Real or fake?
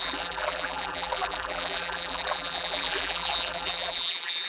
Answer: fake